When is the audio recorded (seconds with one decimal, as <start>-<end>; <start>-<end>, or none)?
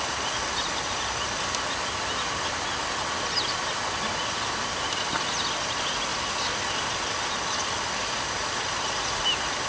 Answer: 0.0-6.1; 7.6-9.7